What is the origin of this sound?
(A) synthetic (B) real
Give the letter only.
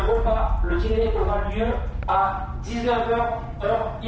B